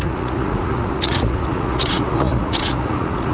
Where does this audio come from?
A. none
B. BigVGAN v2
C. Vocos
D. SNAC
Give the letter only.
C